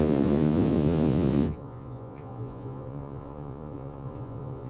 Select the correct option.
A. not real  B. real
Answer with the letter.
A